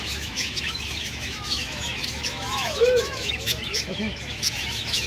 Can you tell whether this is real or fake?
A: fake